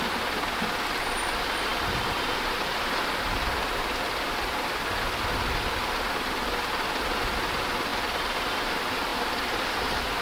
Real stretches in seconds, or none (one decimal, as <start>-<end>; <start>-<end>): 0.0-10.2